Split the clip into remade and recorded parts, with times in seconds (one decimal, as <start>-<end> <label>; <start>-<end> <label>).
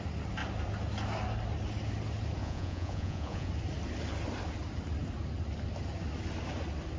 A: 0.0-2.4 recorded; 2.4-3.5 remade; 3.5-7.0 recorded